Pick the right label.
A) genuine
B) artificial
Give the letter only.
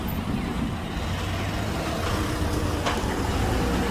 A